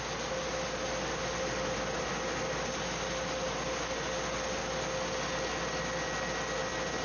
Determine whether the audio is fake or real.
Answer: real